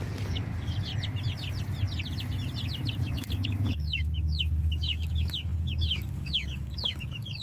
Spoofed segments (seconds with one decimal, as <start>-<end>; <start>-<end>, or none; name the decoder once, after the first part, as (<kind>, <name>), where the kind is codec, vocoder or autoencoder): 0.0-0.9 (codec, DAC); 3.0-7.4